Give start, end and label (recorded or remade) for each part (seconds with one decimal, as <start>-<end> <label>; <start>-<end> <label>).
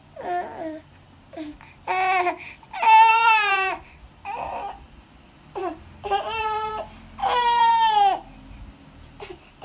0.0-3.1 recorded; 3.1-3.9 remade; 3.9-5.6 recorded; 5.6-6.7 remade; 6.7-7.2 recorded; 7.2-7.7 remade; 7.7-9.6 recorded